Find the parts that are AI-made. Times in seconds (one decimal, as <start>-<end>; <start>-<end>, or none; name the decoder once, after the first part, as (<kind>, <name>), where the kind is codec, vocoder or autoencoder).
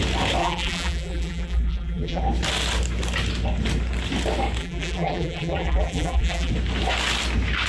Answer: 0.4-2.2 (vocoder, BigVGAN v2); 4.6-6.5